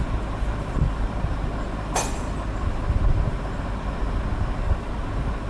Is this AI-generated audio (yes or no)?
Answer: no